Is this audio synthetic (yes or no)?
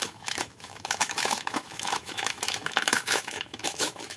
yes